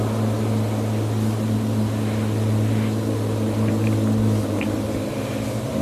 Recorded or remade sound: recorded